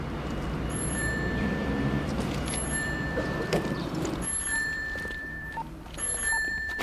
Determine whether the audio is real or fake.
fake